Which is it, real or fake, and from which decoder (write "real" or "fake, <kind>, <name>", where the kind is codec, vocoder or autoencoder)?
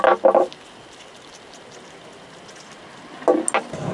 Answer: real